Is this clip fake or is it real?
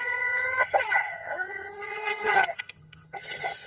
fake